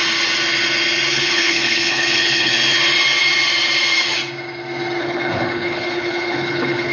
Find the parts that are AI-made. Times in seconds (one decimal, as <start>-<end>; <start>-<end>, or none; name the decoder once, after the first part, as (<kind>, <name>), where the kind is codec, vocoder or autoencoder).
1.1-2.5 (codec, HILCodec); 5.0-6.9